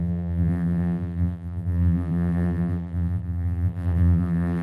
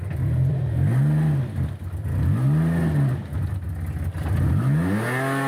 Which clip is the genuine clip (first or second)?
second